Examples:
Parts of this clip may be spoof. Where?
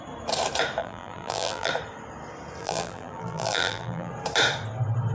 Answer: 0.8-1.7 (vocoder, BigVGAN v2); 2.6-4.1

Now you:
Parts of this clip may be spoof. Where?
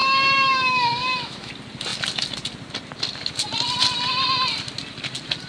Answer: 0.0-1.5 (autoencoder, DAC-VAE)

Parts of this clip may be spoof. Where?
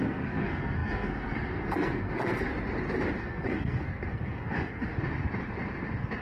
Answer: 0.0-2.5 (codec, SNAC); 3.2-4.9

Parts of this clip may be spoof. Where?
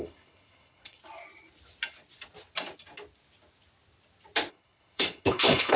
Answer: 0.0-1.0 (codec, HILCodec); 4.5-5.8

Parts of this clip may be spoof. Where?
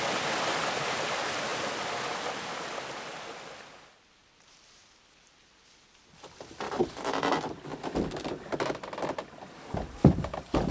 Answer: none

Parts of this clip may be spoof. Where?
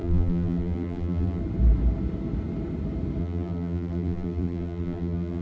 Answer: 0.0-1.4 (vocoder, BigVGAN v2); 3.2-5.4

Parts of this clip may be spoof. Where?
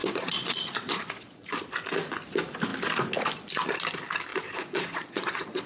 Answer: 0.0-1.5 (vocoder, Vocos); 4.3-5.7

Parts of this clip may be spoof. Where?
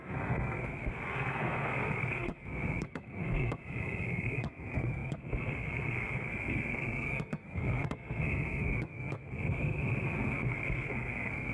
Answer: 0.0-11.5 (codec, SNAC)